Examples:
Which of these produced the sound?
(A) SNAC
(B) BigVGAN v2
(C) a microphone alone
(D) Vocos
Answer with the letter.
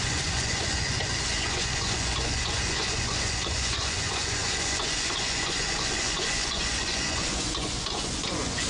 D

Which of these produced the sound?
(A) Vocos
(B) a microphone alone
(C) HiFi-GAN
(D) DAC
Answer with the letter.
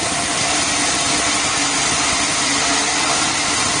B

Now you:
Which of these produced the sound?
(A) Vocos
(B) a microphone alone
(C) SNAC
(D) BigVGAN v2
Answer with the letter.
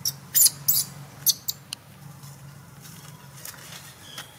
B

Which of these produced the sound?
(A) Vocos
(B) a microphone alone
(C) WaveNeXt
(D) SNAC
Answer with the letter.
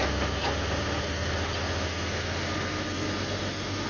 B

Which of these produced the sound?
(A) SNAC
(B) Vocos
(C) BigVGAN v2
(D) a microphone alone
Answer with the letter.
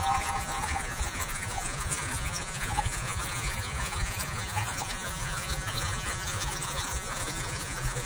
B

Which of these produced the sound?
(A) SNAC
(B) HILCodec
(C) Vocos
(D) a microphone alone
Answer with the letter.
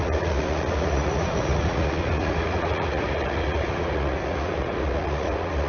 C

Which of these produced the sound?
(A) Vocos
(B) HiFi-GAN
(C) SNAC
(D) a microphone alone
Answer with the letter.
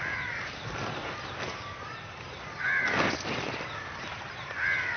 D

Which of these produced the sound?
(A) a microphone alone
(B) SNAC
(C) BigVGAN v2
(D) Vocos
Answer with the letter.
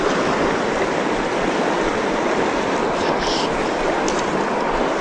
A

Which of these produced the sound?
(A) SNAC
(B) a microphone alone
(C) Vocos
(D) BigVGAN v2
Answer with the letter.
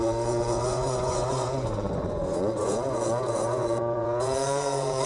C